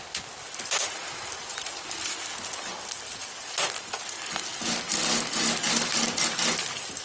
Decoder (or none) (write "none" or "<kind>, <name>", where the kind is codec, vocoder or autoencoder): none